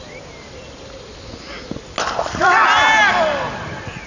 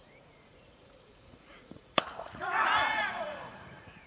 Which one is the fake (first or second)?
second